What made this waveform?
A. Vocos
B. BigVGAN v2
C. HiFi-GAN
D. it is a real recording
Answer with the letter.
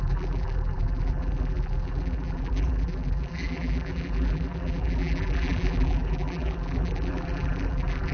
B